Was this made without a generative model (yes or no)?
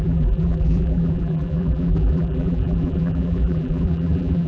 no